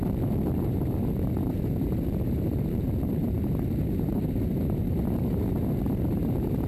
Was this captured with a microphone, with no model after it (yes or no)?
no